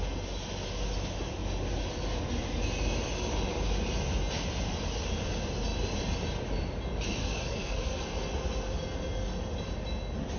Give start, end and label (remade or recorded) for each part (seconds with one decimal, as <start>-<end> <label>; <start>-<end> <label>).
0.0-7.2 recorded; 7.2-8.0 remade; 8.0-10.4 recorded